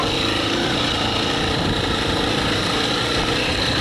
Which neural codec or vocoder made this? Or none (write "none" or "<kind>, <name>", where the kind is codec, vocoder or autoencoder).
vocoder, BigVGAN v2